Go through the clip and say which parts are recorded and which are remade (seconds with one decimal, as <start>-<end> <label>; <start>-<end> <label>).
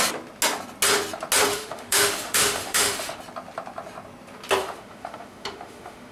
0.0-1.5 recorded; 1.5-3.2 remade; 3.2-4.6 recorded; 4.6-6.1 remade